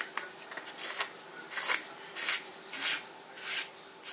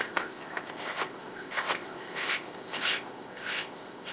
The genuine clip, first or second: first